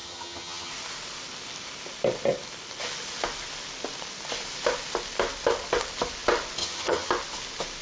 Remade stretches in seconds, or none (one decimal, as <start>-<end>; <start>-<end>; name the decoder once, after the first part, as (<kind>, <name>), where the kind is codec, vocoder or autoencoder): 0.0-0.7 (vocoder, HiFi-GAN); 6.6-7.1